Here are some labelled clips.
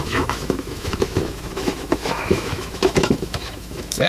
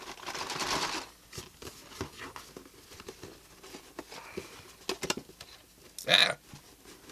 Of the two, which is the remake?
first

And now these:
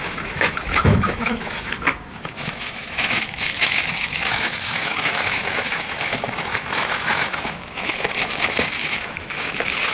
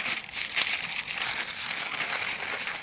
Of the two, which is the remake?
first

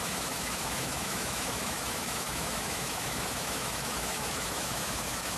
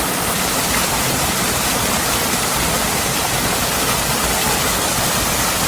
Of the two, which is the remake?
first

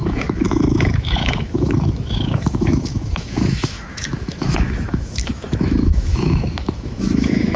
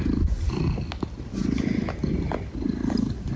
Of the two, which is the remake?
first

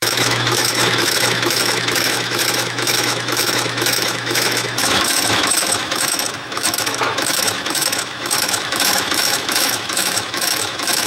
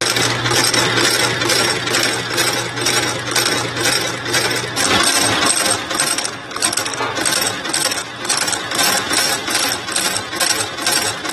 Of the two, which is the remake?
first